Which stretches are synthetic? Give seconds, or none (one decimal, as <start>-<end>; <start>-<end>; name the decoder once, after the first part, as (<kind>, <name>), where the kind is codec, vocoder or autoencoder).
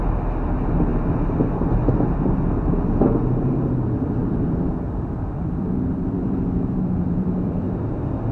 4.2-8.3 (vocoder, BigVGAN v2)